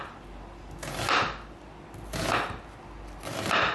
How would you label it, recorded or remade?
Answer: recorded